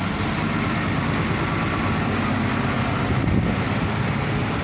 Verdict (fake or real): real